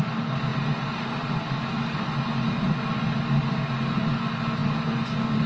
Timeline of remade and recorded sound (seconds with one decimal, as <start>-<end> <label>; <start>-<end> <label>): 0.0-5.5 recorded

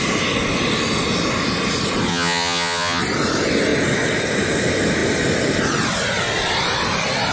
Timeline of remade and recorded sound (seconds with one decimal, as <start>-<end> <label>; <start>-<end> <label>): 0.0-2.1 recorded; 2.1-3.0 remade; 3.0-7.3 recorded

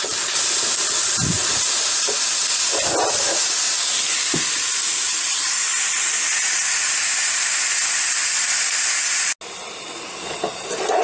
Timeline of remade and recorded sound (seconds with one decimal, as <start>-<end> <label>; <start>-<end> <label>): 0.0-11.0 recorded

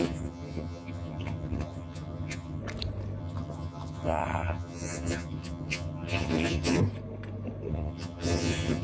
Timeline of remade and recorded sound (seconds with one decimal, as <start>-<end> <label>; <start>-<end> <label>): 0.0-2.6 remade; 2.6-3.2 recorded; 3.2-6.8 remade; 6.8-7.7 recorded; 7.7-8.8 remade

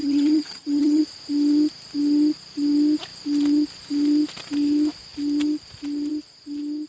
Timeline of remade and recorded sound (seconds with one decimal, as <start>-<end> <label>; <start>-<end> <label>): 0.0-1.0 remade; 1.0-6.9 recorded

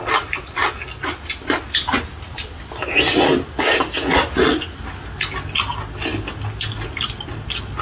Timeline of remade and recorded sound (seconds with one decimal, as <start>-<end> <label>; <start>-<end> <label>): 0.0-7.8 recorded

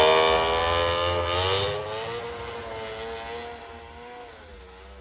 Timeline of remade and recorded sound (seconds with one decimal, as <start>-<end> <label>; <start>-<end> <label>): 0.0-5.0 recorded